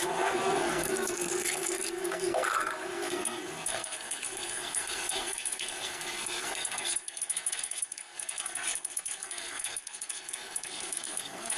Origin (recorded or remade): remade